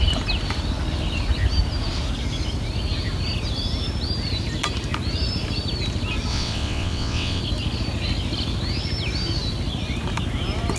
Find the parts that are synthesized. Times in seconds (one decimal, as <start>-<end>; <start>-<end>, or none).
6.3-7.4